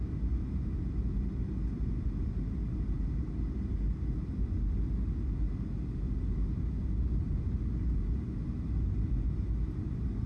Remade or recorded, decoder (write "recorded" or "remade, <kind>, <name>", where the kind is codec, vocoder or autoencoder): recorded